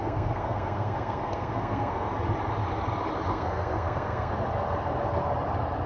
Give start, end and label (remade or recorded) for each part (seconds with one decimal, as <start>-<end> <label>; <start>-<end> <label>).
0.0-2.1 remade; 2.1-3.3 recorded; 3.3-4.3 remade; 4.3-5.9 recorded